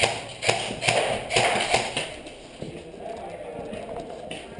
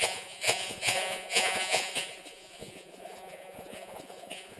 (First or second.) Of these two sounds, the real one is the first